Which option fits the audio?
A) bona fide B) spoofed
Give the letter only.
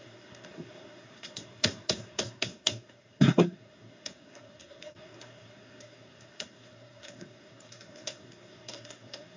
B